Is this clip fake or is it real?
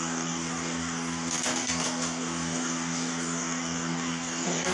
fake